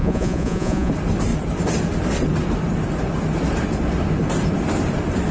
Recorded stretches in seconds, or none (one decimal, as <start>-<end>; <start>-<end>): 0.9-5.3